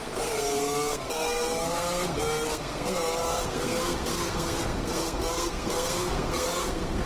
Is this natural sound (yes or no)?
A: no